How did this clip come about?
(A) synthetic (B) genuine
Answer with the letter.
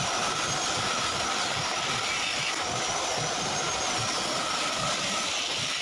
B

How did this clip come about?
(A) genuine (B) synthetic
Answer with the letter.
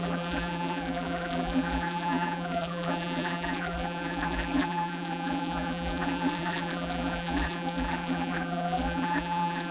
B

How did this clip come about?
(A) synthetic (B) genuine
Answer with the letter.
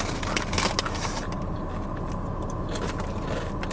B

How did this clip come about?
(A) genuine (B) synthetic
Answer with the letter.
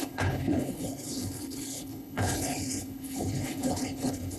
B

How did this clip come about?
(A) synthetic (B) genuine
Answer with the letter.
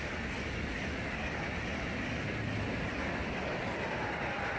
B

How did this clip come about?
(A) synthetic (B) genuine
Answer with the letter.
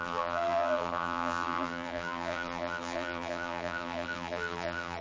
A